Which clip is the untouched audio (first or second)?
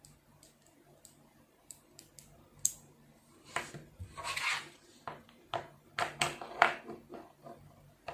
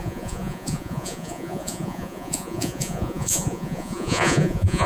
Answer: first